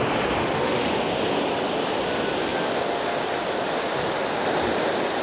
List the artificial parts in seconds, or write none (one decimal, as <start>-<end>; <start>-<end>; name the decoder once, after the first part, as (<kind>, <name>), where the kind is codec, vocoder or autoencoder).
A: 0.4-0.9 (autoencoder, DAC-VAE)